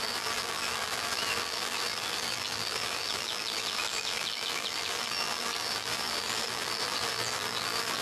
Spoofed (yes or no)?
yes